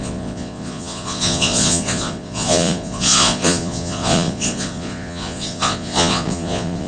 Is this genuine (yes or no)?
no